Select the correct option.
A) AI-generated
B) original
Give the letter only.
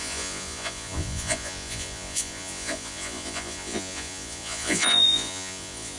A